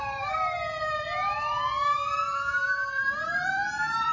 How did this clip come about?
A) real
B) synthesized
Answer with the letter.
B